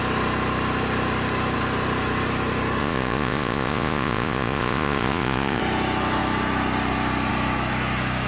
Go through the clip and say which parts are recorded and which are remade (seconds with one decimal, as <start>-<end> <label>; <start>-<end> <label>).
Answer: 0.0-2.8 recorded; 2.8-5.6 remade; 5.6-8.3 recorded